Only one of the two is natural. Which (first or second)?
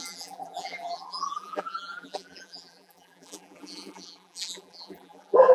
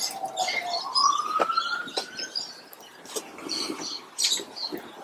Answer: second